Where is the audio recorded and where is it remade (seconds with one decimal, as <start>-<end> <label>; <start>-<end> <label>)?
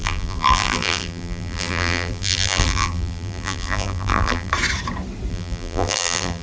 0.0-4.5 remade; 4.5-5.3 recorded; 5.3-6.4 remade